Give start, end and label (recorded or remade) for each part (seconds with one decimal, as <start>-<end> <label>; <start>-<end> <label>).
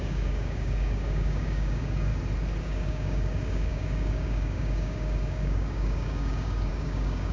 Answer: 0.0-2.1 remade; 2.1-2.6 recorded; 2.6-7.3 remade